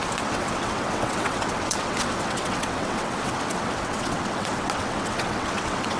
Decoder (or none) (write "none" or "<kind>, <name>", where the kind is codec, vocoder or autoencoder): vocoder, WaveNeXt